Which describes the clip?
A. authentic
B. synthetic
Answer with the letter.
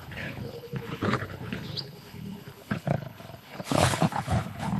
B